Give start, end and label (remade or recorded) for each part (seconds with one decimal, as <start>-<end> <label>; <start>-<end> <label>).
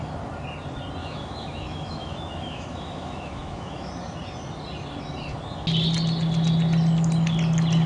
0.0-1.0 recorded; 1.0-3.9 remade; 3.9-7.9 recorded